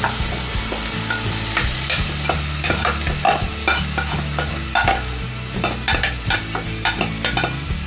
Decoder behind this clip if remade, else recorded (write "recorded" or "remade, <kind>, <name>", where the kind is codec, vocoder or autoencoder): recorded